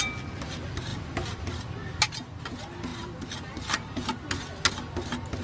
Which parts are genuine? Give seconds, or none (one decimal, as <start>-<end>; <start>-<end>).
0.0-5.4